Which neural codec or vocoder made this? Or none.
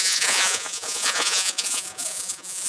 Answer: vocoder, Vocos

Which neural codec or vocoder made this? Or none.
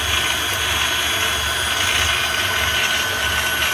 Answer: none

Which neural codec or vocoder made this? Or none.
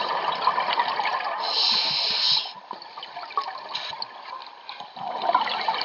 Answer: none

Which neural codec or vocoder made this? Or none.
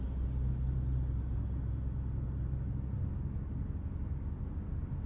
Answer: none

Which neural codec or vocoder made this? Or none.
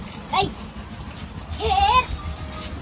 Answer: none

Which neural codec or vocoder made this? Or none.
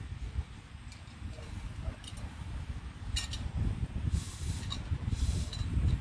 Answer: none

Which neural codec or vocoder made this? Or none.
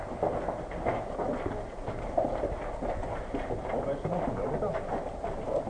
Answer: none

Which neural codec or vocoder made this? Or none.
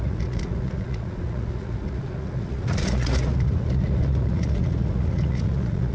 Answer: vocoder, Vocos